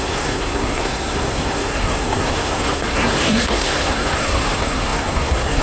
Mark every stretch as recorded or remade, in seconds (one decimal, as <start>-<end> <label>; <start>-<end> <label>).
0.0-5.6 remade